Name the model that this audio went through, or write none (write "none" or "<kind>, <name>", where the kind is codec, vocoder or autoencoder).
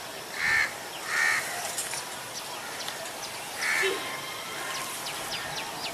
none